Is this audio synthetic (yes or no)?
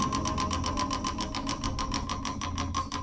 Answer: no